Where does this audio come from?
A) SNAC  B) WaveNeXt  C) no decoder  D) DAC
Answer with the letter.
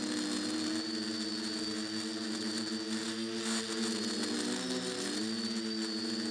C